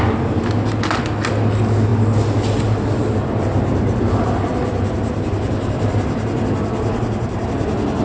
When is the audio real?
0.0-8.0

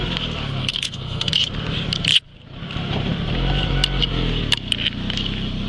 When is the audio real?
0.0-0.6; 1.3-5.7

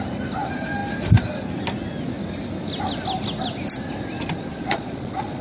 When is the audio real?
0.0-4.5

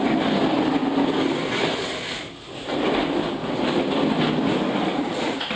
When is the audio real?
0.0-4.9

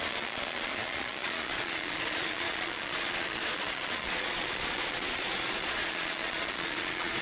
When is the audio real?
none